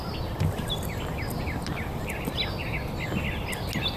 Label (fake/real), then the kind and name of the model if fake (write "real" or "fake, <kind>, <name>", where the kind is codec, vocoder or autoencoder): real